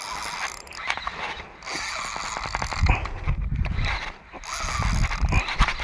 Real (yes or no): yes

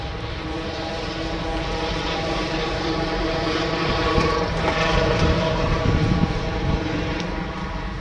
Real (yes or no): no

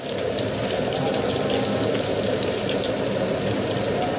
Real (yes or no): no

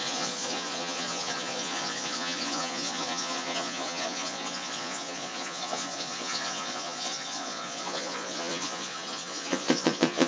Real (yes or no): no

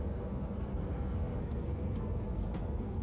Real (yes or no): no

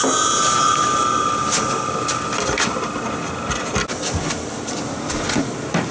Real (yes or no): yes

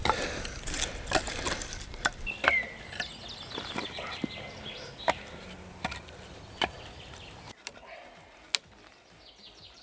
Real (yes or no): yes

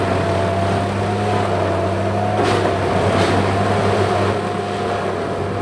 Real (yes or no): yes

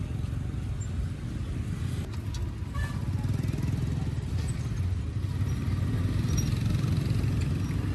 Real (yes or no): yes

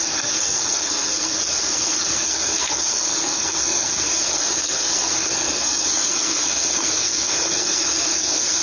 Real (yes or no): no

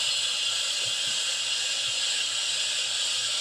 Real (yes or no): yes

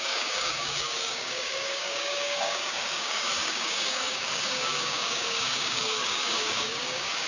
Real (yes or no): no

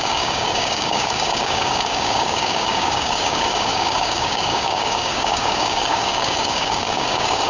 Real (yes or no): no